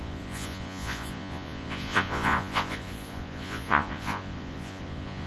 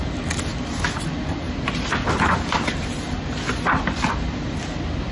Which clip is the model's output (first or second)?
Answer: first